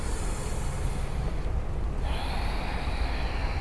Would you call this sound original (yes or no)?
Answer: yes